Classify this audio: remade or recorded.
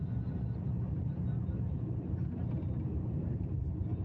recorded